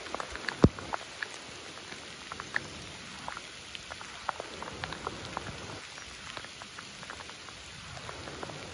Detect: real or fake real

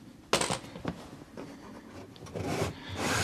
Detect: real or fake real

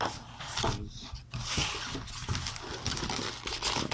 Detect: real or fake real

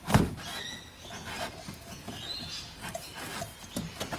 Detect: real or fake real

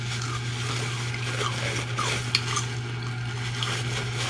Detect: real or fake real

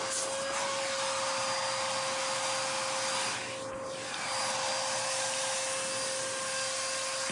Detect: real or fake real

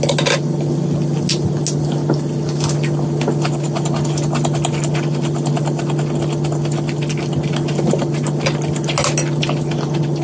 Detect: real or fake real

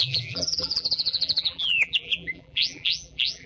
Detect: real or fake fake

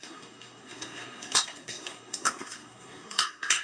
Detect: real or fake fake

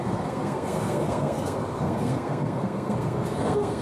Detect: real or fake fake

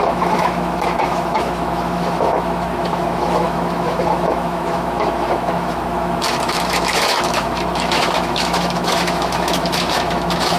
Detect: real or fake fake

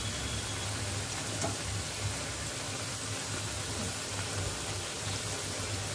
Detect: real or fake real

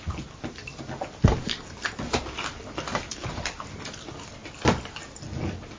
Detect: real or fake real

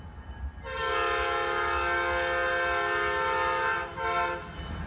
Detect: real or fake real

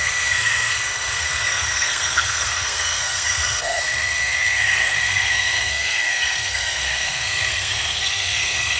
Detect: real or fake fake